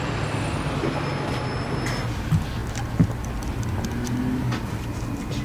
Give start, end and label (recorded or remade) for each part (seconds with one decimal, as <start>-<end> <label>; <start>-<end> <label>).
0.0-5.4 recorded

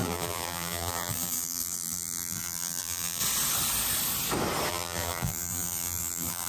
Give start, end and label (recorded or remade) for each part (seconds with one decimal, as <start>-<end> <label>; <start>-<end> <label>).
0.0-3.2 remade; 3.2-4.7 recorded; 4.7-6.5 remade

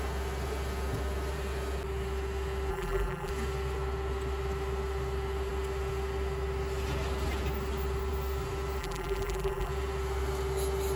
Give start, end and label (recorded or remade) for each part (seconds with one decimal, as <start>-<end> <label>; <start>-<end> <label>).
0.0-2.7 recorded; 2.7-3.3 remade; 3.3-8.8 recorded; 8.8-9.7 remade; 9.7-11.0 recorded

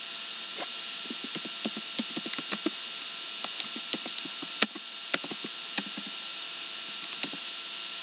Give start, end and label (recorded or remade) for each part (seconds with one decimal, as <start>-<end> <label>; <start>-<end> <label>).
0.0-6.3 recorded; 6.3-7.1 remade; 7.1-8.0 recorded

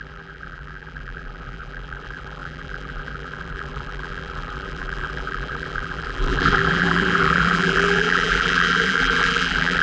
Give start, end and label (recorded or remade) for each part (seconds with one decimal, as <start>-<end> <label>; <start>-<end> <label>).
0.0-9.8 remade

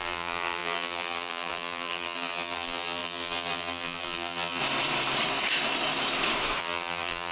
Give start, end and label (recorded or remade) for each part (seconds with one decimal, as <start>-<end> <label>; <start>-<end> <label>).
0.0-4.6 remade; 4.6-6.6 recorded; 6.6-7.3 remade

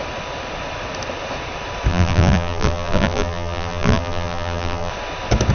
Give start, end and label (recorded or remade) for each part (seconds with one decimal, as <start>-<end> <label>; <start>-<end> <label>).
0.0-1.9 recorded; 1.9-4.9 remade; 4.9-5.5 recorded